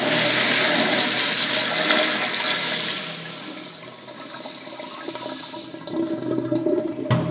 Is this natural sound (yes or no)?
yes